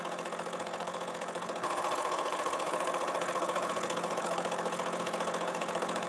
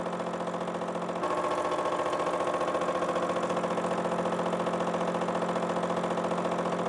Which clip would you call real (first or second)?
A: second